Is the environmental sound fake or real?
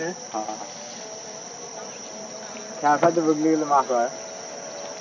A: real